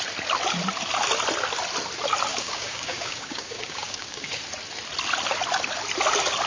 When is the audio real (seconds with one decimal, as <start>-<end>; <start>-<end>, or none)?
0.0-2.3; 4.4-6.5